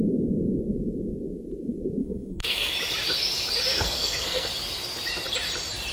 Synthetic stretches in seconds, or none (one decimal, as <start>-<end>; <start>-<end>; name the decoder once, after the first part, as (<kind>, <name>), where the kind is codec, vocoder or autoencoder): 2.0-2.7 (codec, SNAC); 3.7-4.5